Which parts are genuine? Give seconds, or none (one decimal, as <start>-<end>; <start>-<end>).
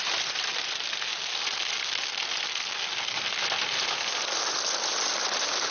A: 0.0-5.7